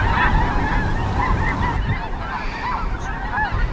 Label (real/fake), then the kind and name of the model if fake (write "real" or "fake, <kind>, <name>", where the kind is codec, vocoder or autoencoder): real